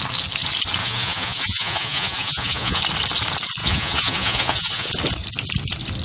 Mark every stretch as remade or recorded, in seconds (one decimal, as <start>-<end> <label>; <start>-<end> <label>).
0.0-0.8 recorded; 0.8-2.8 remade; 2.8-3.6 recorded; 3.6-4.9 remade; 4.9-6.0 recorded

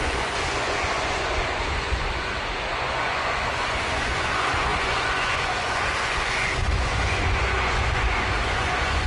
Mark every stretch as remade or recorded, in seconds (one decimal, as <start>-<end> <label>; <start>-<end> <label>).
0.0-9.1 remade

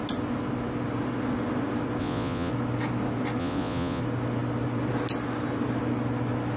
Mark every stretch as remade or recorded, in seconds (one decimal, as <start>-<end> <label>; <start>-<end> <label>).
0.0-2.0 recorded; 2.0-2.5 remade; 2.5-3.4 recorded; 3.4-4.0 remade; 4.0-6.6 recorded

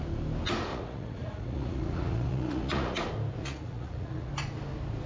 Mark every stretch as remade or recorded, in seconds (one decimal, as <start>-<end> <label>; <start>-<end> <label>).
0.0-0.7 recorded; 0.7-3.0 remade; 3.0-3.4 recorded; 3.4-4.3 remade; 4.3-5.1 recorded

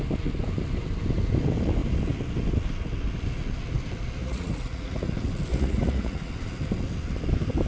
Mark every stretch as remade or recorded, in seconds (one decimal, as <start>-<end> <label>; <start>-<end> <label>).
0.0-4.2 recorded; 4.2-5.1 remade; 5.1-5.5 recorded; 5.5-6.3 remade; 6.3-7.7 recorded

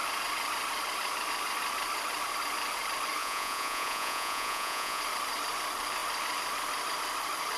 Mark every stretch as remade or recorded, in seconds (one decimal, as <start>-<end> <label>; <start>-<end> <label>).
0.0-3.2 recorded; 3.2-5.0 remade; 5.0-7.6 recorded

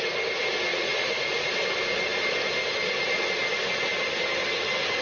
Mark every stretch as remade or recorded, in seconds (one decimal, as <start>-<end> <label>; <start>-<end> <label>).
0.0-0.7 recorded; 0.7-1.5 remade; 1.5-5.0 recorded

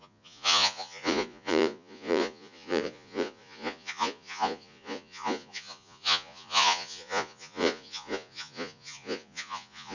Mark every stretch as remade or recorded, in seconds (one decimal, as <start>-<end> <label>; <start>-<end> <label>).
0.0-9.9 remade